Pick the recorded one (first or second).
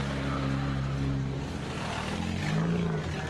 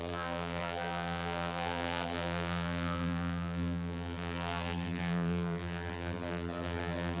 first